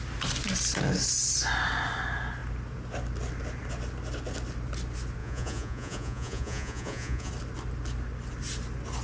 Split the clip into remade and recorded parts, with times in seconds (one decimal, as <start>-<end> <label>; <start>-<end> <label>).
0.0-5.2 recorded; 5.2-7.3 remade; 7.3-9.0 recorded

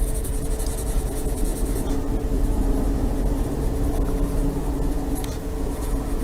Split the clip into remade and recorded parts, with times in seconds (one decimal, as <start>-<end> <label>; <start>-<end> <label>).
0.0-1.5 remade; 1.5-5.2 recorded; 5.2-6.2 remade

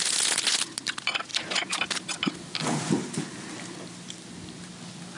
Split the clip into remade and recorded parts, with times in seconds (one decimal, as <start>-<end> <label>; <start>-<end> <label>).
0.0-5.2 recorded

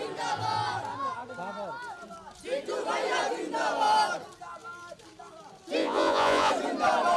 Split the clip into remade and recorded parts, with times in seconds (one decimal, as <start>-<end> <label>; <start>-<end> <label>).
0.0-5.8 recorded; 5.8-6.5 remade; 6.5-7.2 recorded